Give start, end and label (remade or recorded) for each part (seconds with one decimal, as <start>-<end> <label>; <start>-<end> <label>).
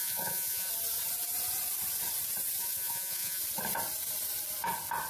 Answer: 0.0-0.7 remade; 0.7-2.6 recorded; 2.6-3.4 remade; 3.4-5.1 recorded